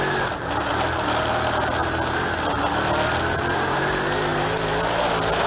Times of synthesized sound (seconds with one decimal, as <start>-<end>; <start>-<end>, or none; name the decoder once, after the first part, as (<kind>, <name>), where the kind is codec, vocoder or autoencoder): none